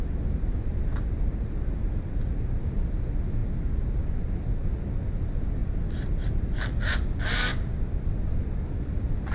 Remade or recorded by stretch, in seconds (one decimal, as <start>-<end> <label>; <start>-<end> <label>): 0.0-9.3 recorded